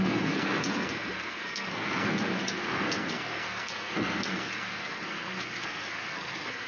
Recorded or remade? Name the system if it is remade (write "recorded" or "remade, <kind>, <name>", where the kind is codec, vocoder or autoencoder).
remade, codec, SNAC